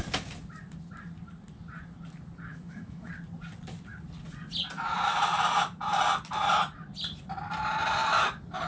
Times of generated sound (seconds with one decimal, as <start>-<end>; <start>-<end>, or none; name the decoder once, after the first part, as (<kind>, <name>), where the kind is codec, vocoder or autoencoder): 2.5-3.1 (autoencoder, DAC-VAE)